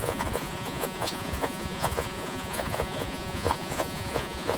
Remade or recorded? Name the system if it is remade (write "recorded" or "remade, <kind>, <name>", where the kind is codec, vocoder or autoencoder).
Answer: remade, vocoder, Vocos